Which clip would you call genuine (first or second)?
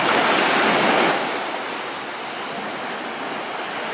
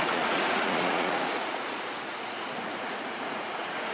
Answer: first